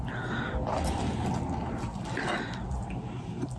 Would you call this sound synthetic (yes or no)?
no